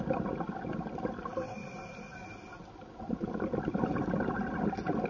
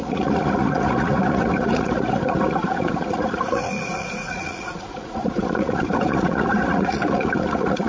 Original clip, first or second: first